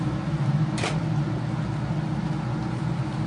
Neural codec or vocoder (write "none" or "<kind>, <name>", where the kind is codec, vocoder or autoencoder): none